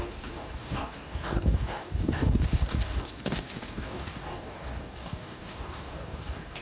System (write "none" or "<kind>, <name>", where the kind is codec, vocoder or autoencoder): codec, DAC